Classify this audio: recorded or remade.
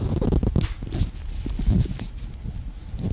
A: recorded